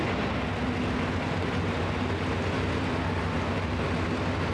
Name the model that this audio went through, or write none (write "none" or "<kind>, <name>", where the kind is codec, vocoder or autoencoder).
none